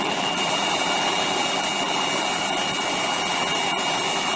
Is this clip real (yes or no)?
no